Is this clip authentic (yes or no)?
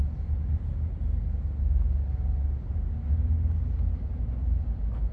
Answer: yes